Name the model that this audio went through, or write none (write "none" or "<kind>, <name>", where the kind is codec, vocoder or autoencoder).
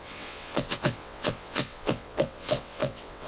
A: vocoder, WaveNeXt